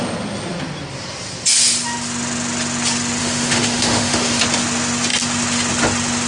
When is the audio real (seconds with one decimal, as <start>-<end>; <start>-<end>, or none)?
0.0-3.2; 4.4-6.3